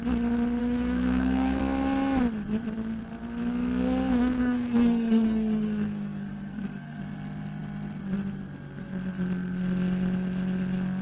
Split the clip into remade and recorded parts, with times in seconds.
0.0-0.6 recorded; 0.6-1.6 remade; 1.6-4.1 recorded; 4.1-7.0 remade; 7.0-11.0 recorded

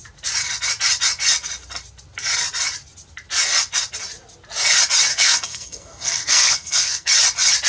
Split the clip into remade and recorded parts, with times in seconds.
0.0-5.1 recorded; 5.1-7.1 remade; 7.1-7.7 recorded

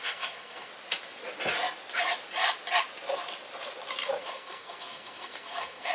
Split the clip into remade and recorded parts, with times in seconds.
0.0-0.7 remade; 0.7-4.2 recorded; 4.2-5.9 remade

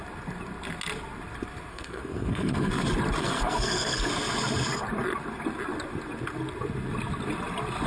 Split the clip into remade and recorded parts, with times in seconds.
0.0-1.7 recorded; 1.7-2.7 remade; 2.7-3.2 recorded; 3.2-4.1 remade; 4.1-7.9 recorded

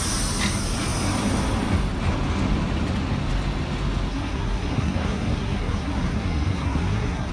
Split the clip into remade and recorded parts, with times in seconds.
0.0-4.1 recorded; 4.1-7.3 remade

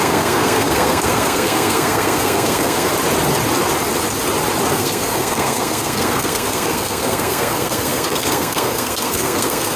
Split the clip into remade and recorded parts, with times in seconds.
0.0-2.9 remade; 2.9-4.7 recorded; 4.7-9.8 remade

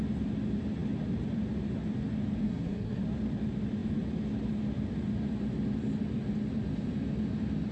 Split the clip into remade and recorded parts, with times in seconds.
0.0-2.4 recorded; 2.4-3.0 remade; 3.0-7.7 recorded